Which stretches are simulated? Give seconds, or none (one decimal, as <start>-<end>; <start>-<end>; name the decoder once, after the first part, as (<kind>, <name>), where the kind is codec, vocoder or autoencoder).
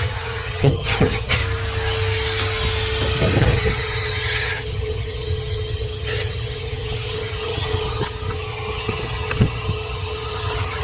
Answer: 0.0-1.4 (vocoder, HiFi-GAN); 3.4-10.8